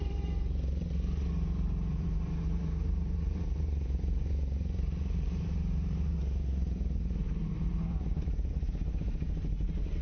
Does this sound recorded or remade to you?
remade